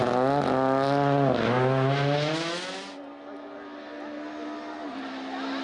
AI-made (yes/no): no